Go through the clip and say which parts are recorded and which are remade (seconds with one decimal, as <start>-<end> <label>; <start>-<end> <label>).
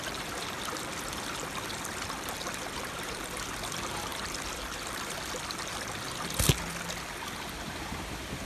0.0-8.5 recorded